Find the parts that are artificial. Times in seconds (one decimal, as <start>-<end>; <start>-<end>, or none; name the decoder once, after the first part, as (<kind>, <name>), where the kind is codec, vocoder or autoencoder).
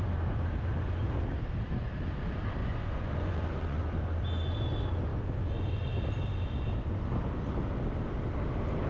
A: 2.6-4.0 (vocoder, Vocos)